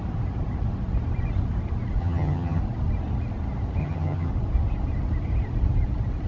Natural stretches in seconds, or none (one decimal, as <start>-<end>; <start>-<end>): 0.0-2.0; 2.6-3.8; 4.3-6.3